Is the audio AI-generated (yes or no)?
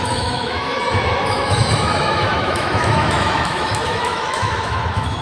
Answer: yes